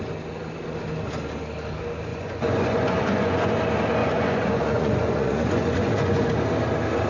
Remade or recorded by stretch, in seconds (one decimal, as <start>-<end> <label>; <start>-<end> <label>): 0.0-2.1 recorded; 2.1-3.5 remade; 3.5-4.0 recorded; 4.0-6.3 remade; 6.3-7.1 recorded